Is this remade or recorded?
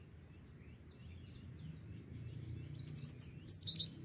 recorded